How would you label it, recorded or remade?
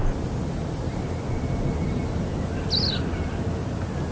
recorded